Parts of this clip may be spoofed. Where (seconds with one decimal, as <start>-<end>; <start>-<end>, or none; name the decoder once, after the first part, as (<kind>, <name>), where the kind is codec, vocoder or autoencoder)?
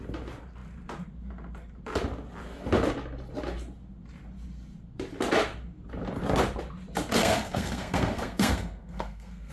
7.2-9.5 (codec, SNAC)